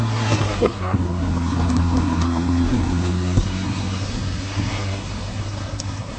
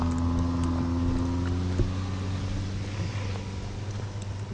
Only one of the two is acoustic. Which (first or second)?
second